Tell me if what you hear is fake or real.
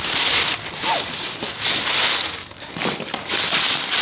real